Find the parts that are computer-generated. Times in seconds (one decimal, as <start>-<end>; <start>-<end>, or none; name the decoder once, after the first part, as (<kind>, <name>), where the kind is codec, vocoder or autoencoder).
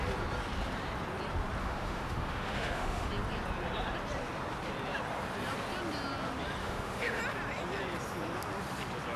1.6-3.1 (autoencoder, DAC-VAE); 6.6-7.2